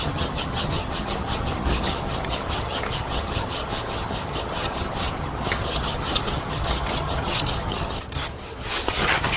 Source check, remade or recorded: remade